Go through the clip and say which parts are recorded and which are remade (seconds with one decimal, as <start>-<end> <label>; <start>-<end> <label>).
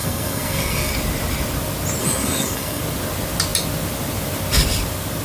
0.0-0.9 remade; 0.9-2.0 recorded; 2.0-2.8 remade; 2.8-5.2 recorded